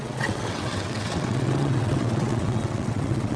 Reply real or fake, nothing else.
fake